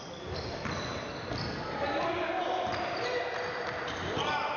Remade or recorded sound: recorded